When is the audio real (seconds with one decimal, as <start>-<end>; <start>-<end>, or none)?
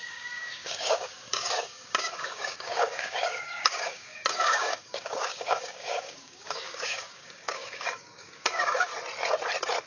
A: 8.9-9.9